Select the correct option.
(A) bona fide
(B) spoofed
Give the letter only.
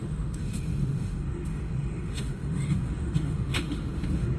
B